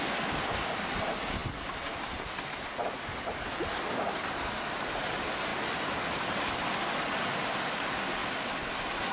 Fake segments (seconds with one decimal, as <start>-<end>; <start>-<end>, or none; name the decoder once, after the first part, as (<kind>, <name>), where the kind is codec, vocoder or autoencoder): none